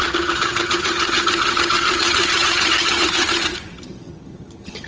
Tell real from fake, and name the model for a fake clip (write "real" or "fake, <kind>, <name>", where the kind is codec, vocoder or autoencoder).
fake, vocoder, HiFi-GAN